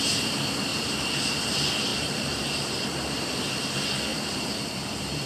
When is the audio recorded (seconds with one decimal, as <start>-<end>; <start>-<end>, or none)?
0.0-0.7; 1.2-1.9; 3.3-4.1